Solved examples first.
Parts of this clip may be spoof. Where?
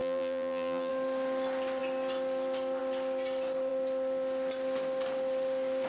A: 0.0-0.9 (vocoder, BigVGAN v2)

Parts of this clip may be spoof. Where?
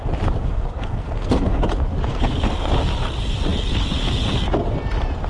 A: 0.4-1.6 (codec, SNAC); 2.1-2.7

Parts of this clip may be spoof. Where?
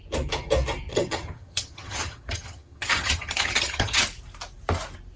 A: 0.9-4.0 (vocoder, HiFi-GAN)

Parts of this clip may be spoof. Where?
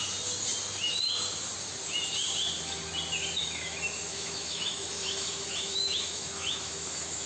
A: 3.4-7.3 (autoencoder, DAC-VAE)